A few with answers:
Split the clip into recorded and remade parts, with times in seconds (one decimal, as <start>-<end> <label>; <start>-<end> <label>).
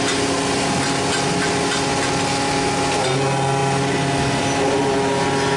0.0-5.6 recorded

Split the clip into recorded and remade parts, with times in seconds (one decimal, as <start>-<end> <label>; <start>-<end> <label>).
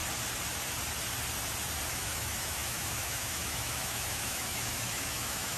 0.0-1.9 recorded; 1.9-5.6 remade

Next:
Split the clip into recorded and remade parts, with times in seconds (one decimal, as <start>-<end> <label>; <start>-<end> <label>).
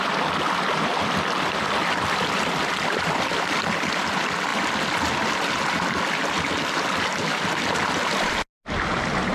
0.0-9.3 recorded